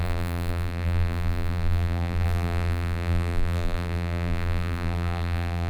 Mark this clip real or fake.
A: fake